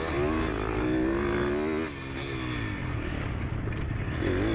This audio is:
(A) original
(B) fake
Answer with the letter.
A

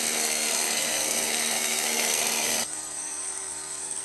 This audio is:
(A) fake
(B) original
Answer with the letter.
A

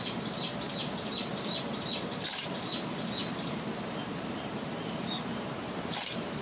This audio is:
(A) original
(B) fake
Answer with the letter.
B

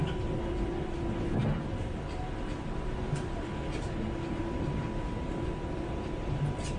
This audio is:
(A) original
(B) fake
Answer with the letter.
A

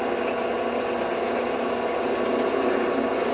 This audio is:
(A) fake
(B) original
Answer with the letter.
B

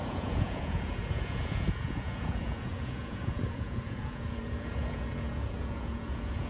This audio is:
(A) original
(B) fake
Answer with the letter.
B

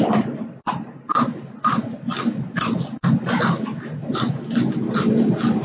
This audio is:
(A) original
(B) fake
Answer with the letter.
A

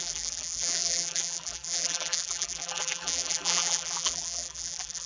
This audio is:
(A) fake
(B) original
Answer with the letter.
A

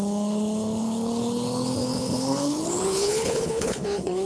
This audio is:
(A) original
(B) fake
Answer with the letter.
B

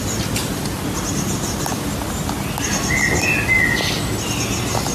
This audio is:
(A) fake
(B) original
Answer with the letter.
B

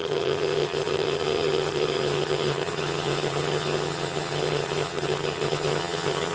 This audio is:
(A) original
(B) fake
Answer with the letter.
B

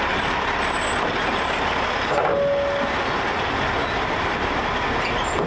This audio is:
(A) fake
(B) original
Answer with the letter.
B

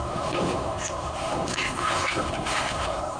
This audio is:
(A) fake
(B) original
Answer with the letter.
A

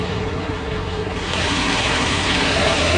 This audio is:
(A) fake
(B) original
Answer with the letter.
A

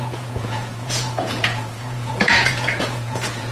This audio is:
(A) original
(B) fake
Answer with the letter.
B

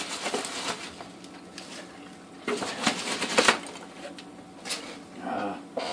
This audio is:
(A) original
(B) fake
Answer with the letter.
A